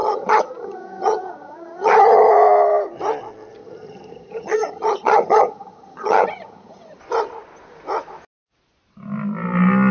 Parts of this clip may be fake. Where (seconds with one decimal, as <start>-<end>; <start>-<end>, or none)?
0.0-2.3; 3.6-7.0